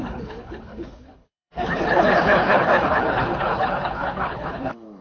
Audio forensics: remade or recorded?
remade